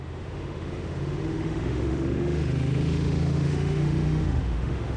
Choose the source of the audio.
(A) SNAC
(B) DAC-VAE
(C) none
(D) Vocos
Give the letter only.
B